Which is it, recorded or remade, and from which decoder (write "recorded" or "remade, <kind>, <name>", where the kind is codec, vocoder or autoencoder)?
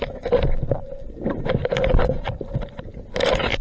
recorded